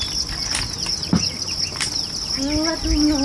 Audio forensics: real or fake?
real